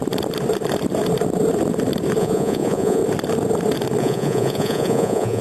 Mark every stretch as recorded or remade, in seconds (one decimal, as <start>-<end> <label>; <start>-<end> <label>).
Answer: 0.0-2.2 recorded; 2.2-3.0 remade; 3.0-4.0 recorded; 4.0-5.4 remade